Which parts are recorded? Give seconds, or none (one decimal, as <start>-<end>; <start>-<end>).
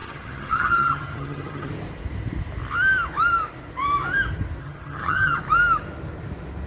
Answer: 1.7-4.6; 5.4-6.7